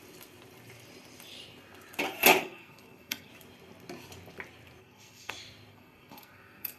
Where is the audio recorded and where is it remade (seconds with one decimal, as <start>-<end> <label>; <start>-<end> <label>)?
0.0-2.4 recorded; 2.4-3.3 remade; 3.3-4.8 recorded; 4.8-5.3 remade; 5.3-5.7 recorded; 5.7-6.8 remade